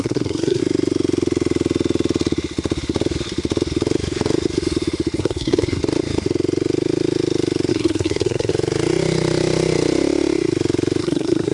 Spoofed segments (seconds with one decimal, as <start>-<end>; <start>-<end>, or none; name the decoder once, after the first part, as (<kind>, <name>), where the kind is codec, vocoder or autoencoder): 0.0-0.6 (codec, SNAC); 5.2-5.8; 7.7-8.5; 11.0-11.5